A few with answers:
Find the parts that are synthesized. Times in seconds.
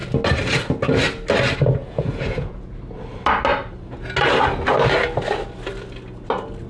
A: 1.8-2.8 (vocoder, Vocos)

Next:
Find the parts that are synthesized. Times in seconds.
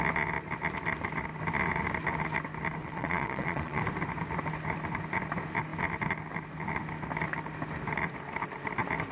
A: 2.8-3.8 (vocoder, Vocos)